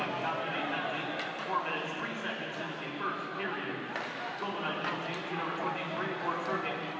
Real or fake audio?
real